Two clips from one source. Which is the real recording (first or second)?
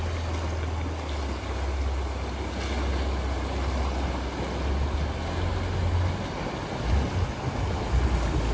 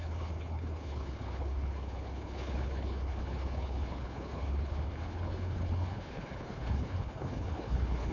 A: first